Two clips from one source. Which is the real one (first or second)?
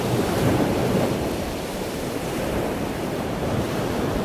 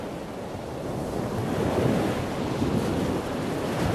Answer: second